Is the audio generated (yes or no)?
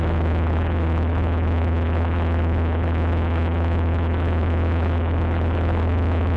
yes